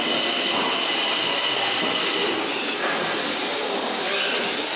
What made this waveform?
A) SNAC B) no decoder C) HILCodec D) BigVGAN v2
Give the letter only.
B